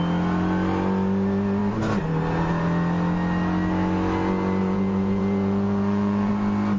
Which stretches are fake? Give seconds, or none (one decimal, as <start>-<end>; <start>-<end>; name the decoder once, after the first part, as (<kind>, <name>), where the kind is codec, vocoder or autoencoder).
4.6-6.3 (vocoder, Vocos)